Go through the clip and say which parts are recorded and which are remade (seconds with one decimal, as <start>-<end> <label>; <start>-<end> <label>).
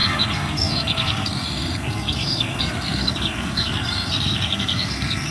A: 0.0-5.3 remade